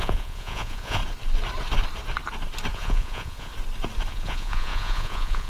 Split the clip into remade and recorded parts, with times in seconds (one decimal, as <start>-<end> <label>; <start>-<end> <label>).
0.0-1.0 remade; 1.0-2.7 recorded; 2.7-3.5 remade; 3.5-4.1 recorded; 4.1-5.5 remade

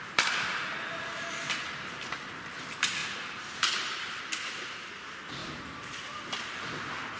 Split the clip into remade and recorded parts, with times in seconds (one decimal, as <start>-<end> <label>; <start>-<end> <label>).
0.0-3.0 recorded; 3.0-4.9 remade; 4.9-5.4 recorded; 5.4-6.4 remade; 6.4-7.2 recorded

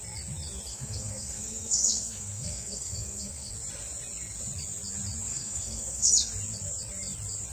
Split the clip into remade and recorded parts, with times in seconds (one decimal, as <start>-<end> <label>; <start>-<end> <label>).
0.0-0.7 recorded; 0.7-3.5 remade; 3.5-5.3 recorded; 5.3-6.1 remade; 6.1-7.5 recorded

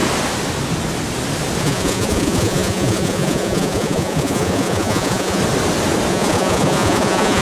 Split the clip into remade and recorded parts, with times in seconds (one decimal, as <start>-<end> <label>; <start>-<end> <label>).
0.0-1.6 recorded; 1.6-5.4 remade; 5.4-6.1 recorded; 6.1-7.4 remade

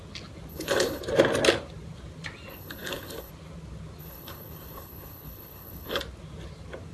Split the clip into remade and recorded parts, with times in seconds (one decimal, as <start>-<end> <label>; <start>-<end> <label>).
0.0-0.5 recorded; 0.5-1.0 remade; 1.0-2.5 recorded; 2.5-3.3 remade; 3.3-4.0 recorded; 4.0-6.0 remade; 6.0-6.9 recorded

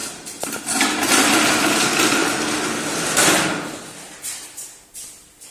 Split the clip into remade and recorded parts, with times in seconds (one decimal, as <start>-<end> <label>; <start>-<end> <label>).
0.0-5.5 recorded

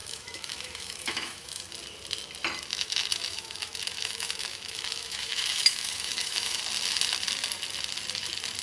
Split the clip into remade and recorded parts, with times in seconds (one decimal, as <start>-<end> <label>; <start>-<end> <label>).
0.0-1.6 remade; 1.6-2.7 recorded; 2.7-6.6 remade; 6.6-8.6 recorded